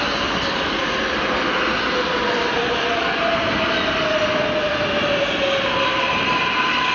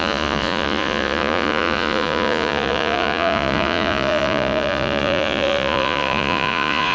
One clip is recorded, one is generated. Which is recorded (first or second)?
first